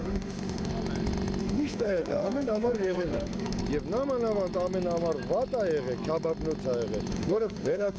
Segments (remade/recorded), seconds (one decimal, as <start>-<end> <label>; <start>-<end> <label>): 0.0-0.7 remade; 0.7-1.4 recorded; 1.4-3.6 remade; 3.6-7.1 recorded; 7.1-8.0 remade